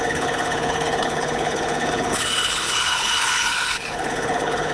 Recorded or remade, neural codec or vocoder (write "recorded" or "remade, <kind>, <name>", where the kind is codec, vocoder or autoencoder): remade, codec, HILCodec